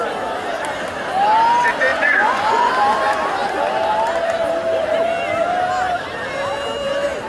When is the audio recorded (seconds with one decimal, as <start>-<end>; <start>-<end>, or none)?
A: 0.0-1.9; 2.7-7.3